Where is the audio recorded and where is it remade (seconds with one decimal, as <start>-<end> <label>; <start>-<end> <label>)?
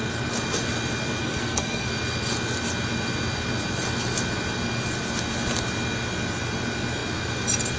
0.0-1.2 recorded; 1.2-1.9 remade; 1.9-7.8 recorded